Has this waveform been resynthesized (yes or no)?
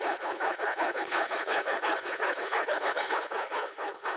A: yes